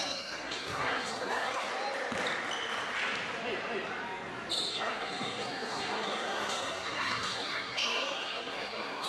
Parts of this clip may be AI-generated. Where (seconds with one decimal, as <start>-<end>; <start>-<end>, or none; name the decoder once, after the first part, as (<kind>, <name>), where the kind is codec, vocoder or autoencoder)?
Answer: 0.0-1.7 (codec, SNAC); 4.7-9.1